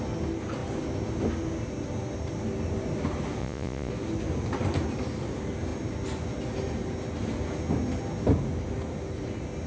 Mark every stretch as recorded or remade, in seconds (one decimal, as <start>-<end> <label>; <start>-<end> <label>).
0.0-3.4 recorded; 3.4-3.9 remade; 3.9-9.7 recorded